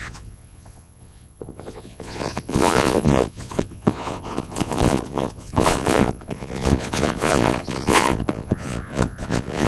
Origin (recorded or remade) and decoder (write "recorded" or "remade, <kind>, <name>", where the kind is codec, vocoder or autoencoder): remade, vocoder, Vocos